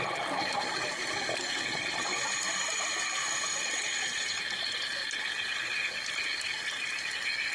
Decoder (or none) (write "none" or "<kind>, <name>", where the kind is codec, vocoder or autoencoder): none